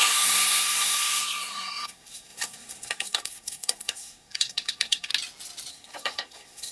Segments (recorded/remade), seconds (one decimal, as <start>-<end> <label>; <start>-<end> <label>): 0.0-5.1 remade; 5.1-5.7 recorded; 5.7-6.7 remade